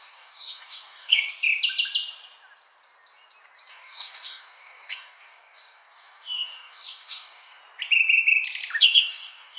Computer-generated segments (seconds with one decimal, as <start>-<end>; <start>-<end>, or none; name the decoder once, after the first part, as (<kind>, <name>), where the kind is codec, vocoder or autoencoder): 0.0-1.3 (codec, DAC); 3.7-7.6; 8.8-9.6

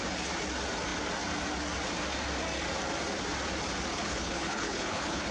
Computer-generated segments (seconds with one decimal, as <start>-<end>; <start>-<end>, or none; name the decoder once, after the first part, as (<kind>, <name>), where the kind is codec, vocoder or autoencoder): 3.9-5.3 (codec, HILCodec)

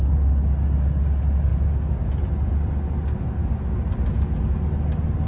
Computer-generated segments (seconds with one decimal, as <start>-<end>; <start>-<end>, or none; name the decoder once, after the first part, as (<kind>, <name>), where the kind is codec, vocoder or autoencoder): none